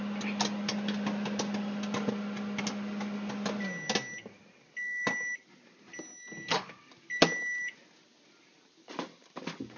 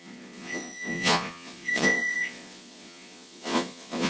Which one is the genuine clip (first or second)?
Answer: first